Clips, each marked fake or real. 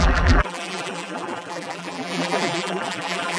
fake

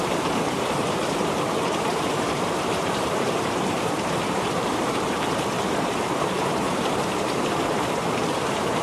fake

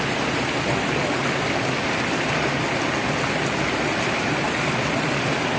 real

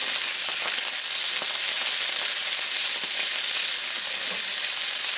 real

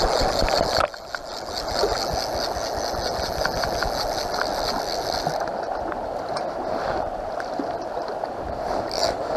real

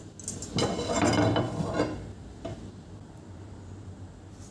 real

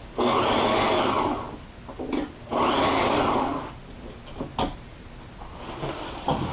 real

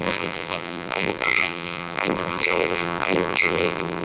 fake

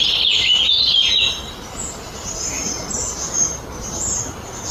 real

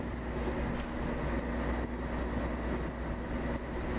real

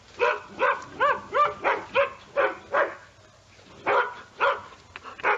real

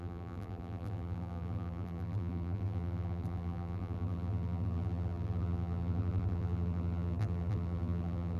fake